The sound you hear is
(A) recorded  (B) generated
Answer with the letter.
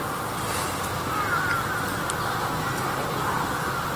A